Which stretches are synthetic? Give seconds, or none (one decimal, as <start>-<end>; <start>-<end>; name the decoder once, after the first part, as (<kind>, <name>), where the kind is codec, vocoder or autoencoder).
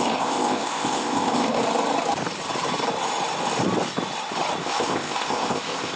0.0-1.6 (codec, ZipCodec); 4.6-6.0